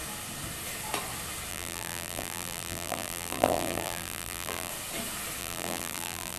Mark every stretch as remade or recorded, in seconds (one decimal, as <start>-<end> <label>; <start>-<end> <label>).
0.0-1.5 recorded; 1.5-4.7 remade; 4.7-5.4 recorded; 5.4-6.4 remade